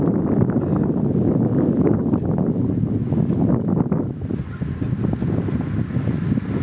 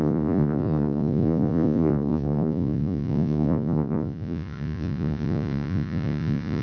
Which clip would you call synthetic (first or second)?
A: second